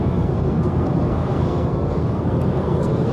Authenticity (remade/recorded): remade